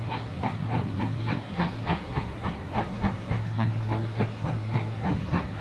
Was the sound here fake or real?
fake